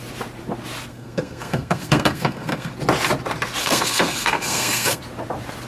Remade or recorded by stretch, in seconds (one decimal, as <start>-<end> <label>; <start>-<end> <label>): 0.0-0.9 recorded; 0.9-2.7 remade; 2.7-3.6 recorded; 3.6-5.0 remade; 5.0-5.7 recorded